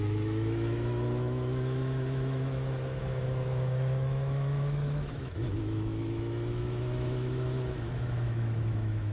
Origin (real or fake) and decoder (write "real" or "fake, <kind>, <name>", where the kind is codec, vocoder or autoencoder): fake, autoencoder, DAC-VAE